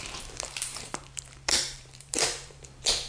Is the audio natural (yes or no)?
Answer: no